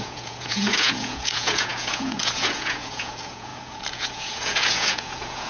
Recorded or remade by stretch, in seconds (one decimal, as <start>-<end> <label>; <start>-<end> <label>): 0.0-5.5 remade